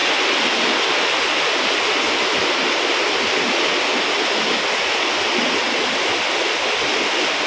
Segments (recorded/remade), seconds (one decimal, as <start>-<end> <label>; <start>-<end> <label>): 0.0-7.5 recorded